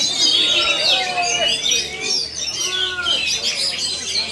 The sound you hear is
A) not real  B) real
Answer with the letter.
B